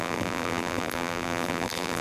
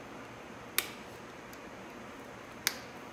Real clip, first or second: second